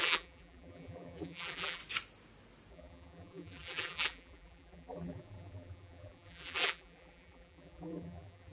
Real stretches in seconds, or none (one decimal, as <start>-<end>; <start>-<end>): 1.8-2.7